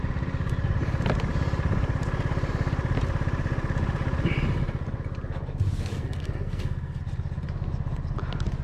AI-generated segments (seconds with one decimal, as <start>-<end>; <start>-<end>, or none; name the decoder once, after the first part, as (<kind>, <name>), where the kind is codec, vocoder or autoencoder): 5.9-7.0 (codec, SNAC)